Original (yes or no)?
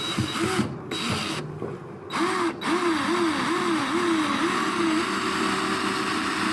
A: yes